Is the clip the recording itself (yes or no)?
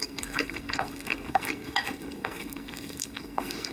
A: no